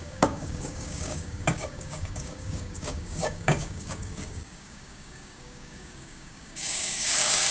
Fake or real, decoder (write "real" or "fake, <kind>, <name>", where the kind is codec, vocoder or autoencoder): fake, codec, DAC